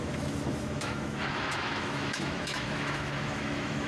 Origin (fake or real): fake